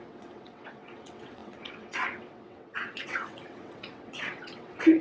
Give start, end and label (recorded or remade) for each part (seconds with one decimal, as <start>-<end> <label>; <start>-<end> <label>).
0.0-5.0 remade